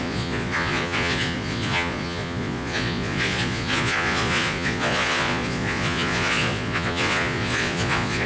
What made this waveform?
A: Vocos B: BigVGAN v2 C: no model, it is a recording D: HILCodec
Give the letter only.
A